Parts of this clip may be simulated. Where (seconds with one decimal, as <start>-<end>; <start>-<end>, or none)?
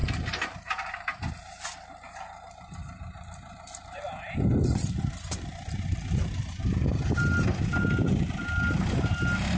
0.0-1.3